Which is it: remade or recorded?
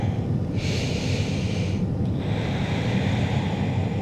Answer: recorded